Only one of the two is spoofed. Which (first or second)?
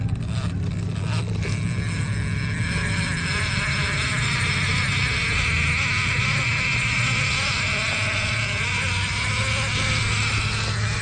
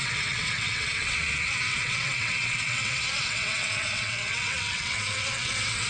second